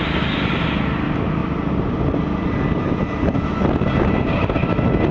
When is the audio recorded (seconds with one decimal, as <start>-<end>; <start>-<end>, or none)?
0.0-5.1